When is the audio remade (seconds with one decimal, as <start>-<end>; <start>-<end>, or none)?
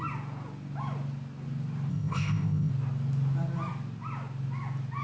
1.9-2.7